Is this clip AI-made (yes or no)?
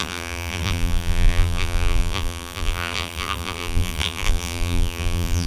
yes